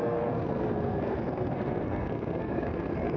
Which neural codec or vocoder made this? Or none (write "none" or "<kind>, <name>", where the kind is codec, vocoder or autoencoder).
codec, SNAC